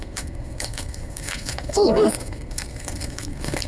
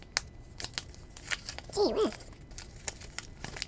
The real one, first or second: second